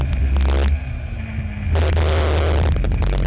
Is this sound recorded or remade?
recorded